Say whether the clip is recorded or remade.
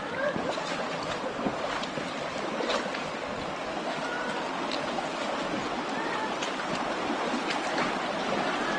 recorded